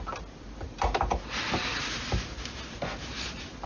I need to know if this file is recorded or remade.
recorded